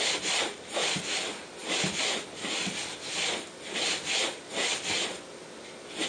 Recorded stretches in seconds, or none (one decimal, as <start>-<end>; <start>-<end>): 0.0-6.1